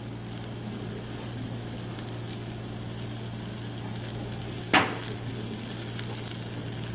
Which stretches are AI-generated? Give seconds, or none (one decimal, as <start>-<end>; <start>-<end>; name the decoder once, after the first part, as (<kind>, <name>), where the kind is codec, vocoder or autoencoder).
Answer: none